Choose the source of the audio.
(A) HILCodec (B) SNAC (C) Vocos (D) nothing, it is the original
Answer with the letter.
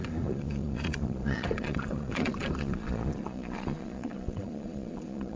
C